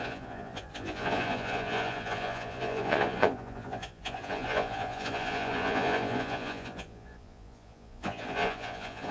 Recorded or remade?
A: remade